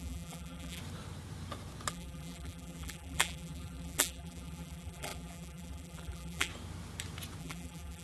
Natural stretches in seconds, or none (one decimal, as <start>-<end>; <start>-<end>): 0.8-1.9; 6.5-7.4